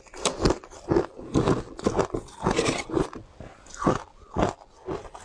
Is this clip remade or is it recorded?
recorded